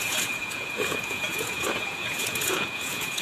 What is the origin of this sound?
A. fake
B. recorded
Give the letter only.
A